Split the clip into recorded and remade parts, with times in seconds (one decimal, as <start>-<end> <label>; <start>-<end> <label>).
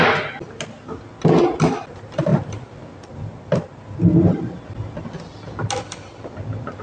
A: 0.0-6.8 recorded